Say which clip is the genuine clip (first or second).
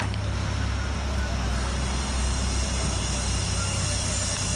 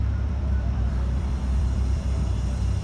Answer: first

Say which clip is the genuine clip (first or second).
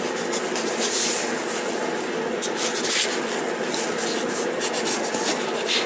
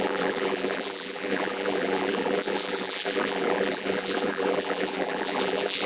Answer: first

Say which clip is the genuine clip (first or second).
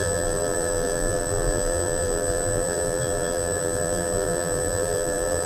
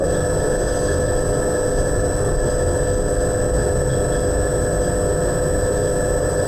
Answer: second